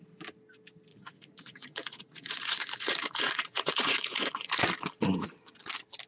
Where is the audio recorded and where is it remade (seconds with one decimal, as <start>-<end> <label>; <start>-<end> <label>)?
0.0-0.9 recorded; 0.9-4.6 remade; 4.6-6.1 recorded